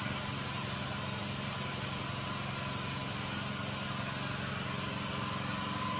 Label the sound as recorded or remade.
recorded